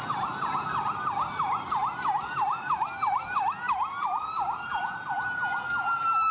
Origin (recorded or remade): recorded